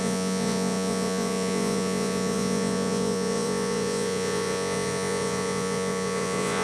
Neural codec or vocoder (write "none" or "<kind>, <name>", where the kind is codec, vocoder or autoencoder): vocoder, Vocos